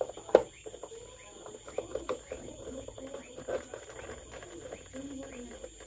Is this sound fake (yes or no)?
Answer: no